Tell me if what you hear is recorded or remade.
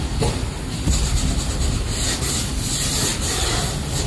recorded